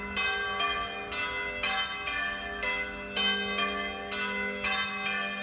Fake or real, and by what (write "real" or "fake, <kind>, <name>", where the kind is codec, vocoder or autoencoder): real